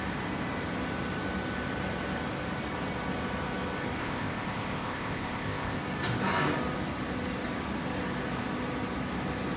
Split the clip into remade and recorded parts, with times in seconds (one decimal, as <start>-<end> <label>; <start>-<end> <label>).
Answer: 0.0-4.0 recorded; 4.0-5.8 remade; 5.8-9.6 recorded